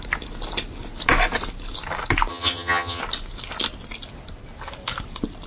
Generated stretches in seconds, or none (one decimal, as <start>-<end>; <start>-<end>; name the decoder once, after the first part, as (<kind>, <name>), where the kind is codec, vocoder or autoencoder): 2.3-3.0 (vocoder, HiFi-GAN)